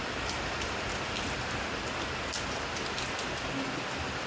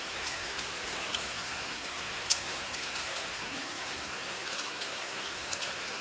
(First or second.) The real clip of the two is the first